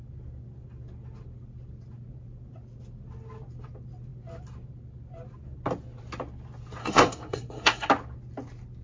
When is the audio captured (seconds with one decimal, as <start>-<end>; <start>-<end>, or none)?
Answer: 0.0-6.8; 7.9-8.8